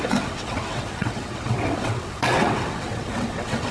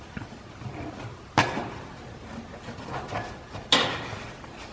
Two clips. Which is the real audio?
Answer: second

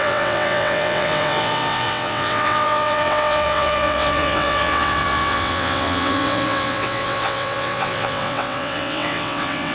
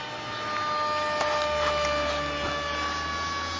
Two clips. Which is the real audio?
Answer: second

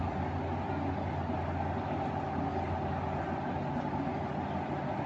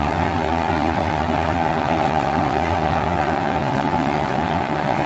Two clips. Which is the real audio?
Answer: first